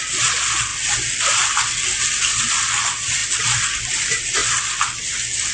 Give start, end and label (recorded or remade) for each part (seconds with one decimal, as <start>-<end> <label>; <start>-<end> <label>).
0.0-4.4 recorded; 4.4-5.0 remade; 5.0-5.5 recorded